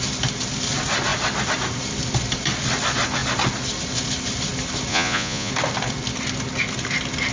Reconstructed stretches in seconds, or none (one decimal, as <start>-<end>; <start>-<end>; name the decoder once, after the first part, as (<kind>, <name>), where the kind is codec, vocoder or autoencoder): 4.9-5.5 (vocoder, Vocos)